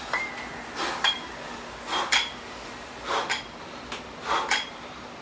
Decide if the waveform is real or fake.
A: fake